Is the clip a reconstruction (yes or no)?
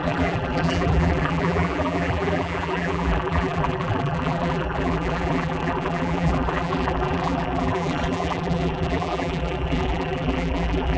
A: yes